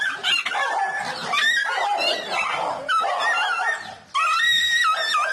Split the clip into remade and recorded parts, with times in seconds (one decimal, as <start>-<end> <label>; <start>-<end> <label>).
0.0-5.3 recorded